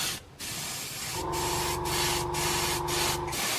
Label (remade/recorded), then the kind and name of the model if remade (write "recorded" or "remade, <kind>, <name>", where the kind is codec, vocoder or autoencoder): recorded